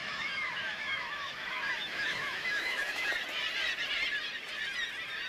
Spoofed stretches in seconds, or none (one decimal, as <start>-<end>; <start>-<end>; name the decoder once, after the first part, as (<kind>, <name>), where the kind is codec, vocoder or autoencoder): 0.0-3.1 (autoencoder, DAC-VAE)